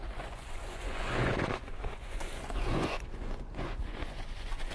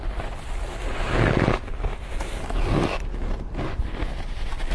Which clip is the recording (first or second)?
second